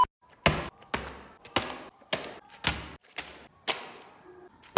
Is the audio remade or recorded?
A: recorded